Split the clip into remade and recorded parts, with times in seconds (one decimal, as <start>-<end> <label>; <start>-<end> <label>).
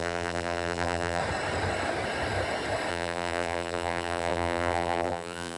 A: 0.0-1.2 remade; 1.2-2.9 recorded; 2.9-5.6 remade